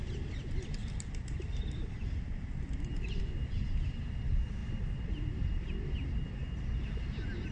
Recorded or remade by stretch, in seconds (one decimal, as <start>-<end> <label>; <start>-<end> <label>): 0.0-0.8 recorded; 0.8-3.2 remade; 3.2-7.5 recorded